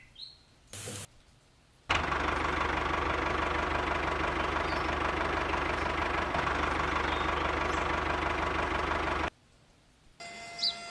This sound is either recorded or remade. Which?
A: recorded